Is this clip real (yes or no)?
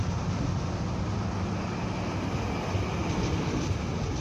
yes